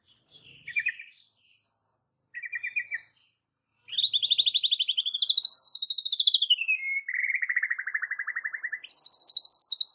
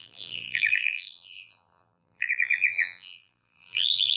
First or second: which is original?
first